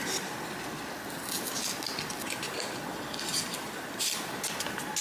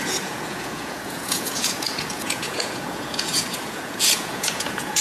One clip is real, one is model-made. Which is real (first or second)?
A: first